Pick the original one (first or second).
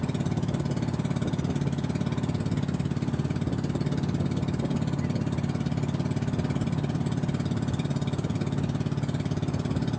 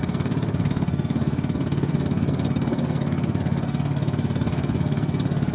first